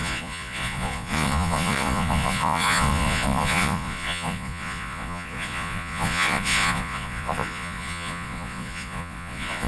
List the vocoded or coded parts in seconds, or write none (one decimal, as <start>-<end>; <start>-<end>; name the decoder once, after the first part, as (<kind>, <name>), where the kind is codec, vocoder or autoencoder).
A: 0.0-9.7 (vocoder, Vocos)